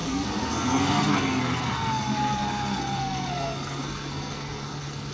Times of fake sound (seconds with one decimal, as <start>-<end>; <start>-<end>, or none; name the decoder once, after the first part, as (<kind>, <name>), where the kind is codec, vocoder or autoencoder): 0.0-5.1 (codec, SNAC)